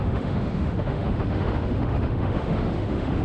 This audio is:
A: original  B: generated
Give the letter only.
B